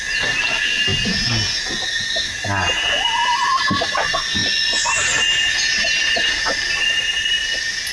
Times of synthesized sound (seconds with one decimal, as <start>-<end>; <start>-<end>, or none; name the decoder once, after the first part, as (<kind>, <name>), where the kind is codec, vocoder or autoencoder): 4.4-4.9 (vocoder, Vocos)